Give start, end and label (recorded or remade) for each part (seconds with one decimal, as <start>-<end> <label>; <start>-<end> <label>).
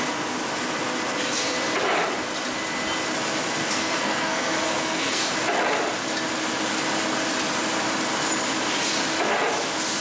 0.0-3.6 recorded; 3.6-5.3 remade; 5.3-10.0 recorded